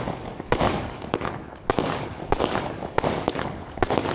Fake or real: fake